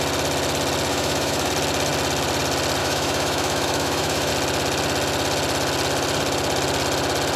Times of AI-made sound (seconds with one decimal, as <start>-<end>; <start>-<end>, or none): 0.9-1.5; 2.8-4.3